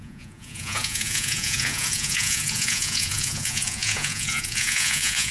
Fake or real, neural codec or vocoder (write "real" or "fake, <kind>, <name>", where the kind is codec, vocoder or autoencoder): fake, vocoder, Vocos